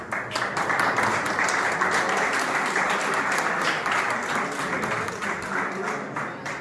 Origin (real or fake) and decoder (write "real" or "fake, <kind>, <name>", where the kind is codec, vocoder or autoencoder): real